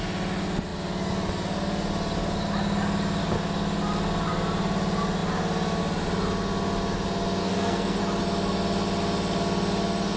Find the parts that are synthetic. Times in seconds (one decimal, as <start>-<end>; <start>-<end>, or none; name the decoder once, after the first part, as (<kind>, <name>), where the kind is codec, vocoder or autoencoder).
7.4-8.0 (codec, SNAC)